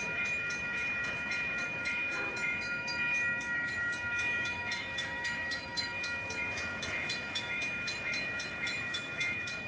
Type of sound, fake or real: fake